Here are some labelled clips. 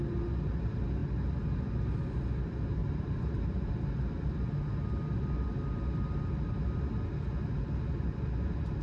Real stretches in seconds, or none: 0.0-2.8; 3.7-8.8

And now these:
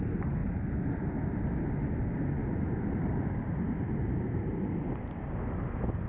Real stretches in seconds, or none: 0.0-0.4; 1.0-2.4; 4.7-6.1

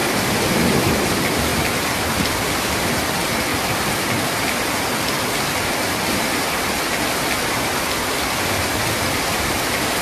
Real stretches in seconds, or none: 1.5-2.5; 3.5-8.4

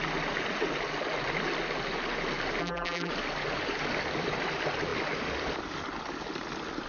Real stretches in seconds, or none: 0.0-2.6; 3.1-6.9

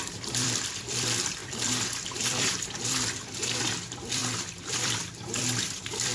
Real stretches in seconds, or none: 4.2-4.7

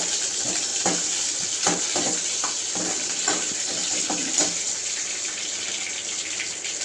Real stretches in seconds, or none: 0.0-0.7; 1.8-6.8

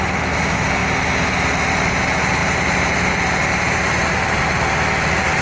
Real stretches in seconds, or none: 0.0-2.4; 4.4-5.4

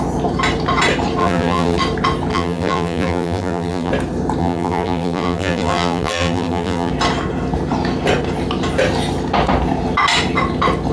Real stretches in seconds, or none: 0.0-1.2; 1.8-2.3; 3.9-4.4; 6.9-10.9